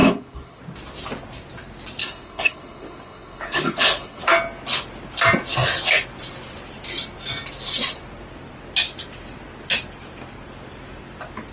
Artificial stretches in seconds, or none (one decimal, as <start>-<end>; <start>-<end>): 0.0-0.6; 2.0-4.2